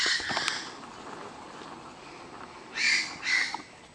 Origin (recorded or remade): recorded